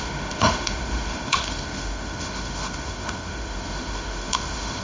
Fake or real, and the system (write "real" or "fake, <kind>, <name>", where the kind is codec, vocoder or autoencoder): fake, autoencoder, DAC-VAE